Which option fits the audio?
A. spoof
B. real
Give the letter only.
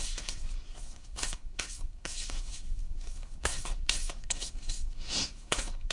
A